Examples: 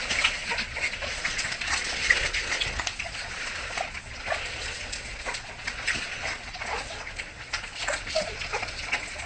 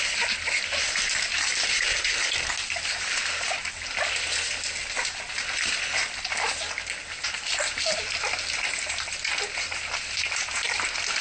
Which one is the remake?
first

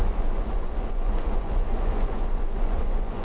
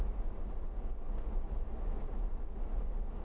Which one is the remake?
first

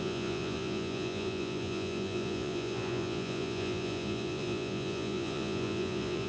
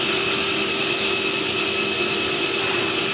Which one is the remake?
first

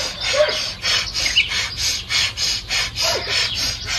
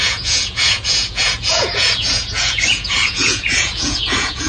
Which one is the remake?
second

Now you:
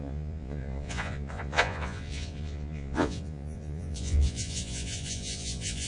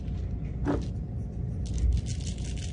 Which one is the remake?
first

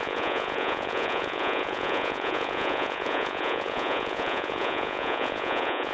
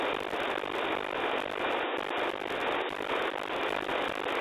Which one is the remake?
first